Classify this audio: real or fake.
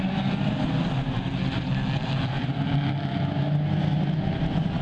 real